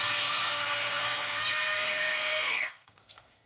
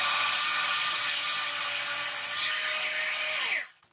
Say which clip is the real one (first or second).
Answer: second